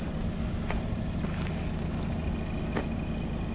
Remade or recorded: recorded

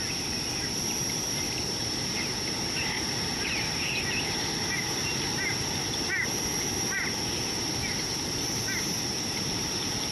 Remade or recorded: remade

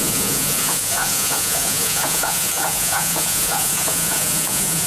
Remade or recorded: remade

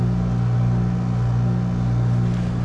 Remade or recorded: recorded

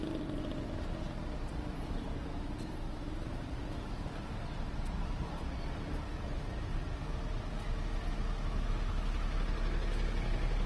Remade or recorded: recorded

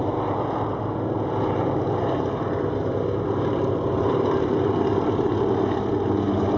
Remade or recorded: recorded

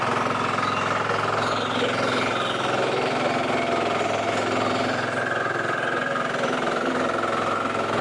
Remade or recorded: recorded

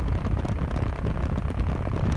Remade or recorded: recorded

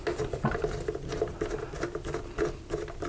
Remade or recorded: recorded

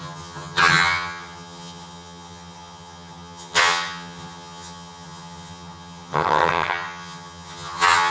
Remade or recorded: remade